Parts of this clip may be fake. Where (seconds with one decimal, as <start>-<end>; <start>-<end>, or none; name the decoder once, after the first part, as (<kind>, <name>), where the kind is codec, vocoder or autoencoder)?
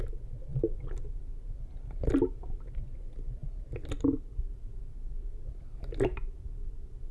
none